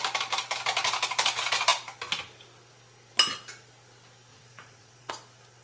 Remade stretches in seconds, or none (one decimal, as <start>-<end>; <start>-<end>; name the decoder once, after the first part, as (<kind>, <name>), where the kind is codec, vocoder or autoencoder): 4.3-5.1 (vocoder, Vocos)

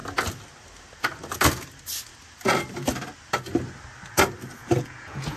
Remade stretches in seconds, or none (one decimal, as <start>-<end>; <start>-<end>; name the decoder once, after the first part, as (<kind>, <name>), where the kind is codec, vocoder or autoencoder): 4.6-5.4 (vocoder, Vocos)

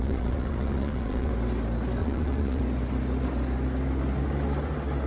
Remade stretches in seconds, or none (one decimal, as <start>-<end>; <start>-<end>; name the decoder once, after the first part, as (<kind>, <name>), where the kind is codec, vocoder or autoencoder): 0.0-1.3 (vocoder, Vocos); 2.0-2.6

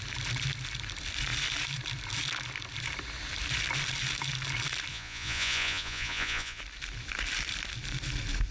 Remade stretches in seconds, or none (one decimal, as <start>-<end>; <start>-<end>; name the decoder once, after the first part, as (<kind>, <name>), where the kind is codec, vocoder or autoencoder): 4.9-6.6 (vocoder, Vocos)

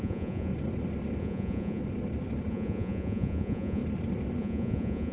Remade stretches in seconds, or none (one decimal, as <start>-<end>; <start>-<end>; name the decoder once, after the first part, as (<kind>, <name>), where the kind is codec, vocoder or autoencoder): 0.0-0.5 (vocoder, Vocos); 1.2-1.8; 2.5-3.8; 4.4-5.1

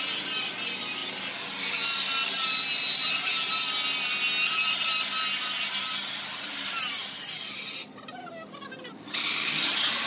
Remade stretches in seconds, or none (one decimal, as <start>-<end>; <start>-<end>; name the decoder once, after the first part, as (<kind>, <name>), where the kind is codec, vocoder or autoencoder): none